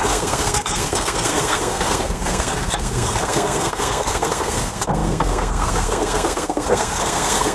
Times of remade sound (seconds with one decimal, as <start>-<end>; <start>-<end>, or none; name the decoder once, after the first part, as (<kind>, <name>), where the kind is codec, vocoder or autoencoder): 0.0-7.5 (codec, SNAC)